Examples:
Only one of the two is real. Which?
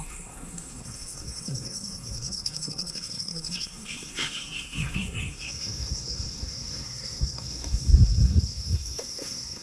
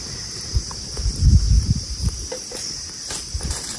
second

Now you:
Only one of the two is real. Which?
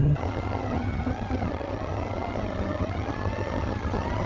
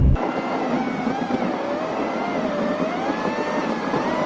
second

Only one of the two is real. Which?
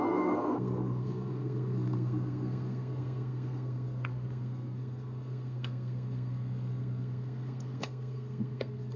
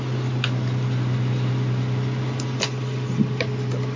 second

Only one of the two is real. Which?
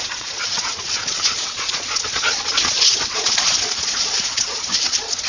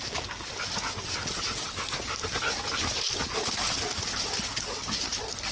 second